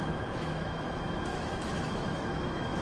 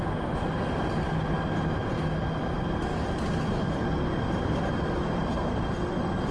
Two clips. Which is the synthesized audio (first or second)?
first